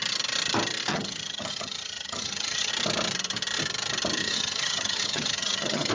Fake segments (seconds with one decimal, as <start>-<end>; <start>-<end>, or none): 0.9-2.7; 4.2-5.9